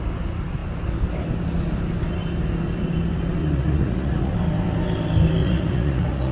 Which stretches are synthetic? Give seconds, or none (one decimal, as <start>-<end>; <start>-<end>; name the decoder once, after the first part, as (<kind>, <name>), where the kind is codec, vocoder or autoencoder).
3.4-4.3 (vocoder, Vocos); 5.4-6.3